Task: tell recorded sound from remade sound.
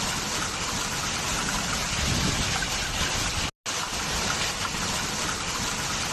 recorded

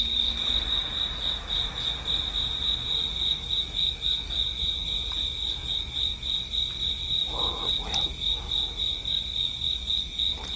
recorded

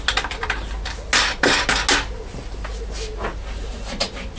recorded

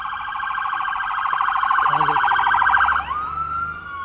recorded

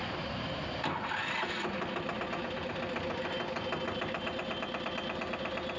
recorded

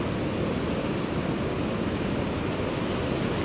recorded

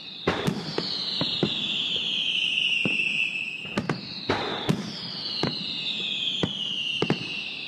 recorded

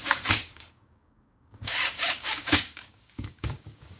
remade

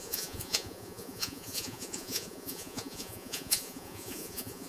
remade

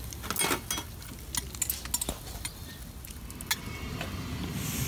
recorded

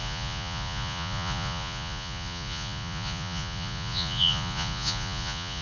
remade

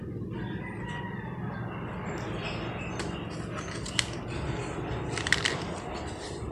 recorded